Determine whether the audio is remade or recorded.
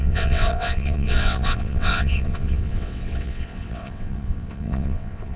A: remade